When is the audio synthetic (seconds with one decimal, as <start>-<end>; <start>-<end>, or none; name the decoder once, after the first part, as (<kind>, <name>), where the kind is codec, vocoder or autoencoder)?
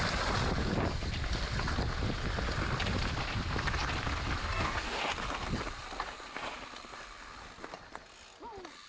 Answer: 4.4-5.0 (codec, DAC)